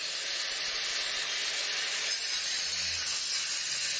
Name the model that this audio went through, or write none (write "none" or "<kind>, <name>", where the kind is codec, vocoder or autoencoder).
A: none